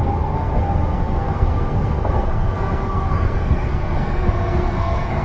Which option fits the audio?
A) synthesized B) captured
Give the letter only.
A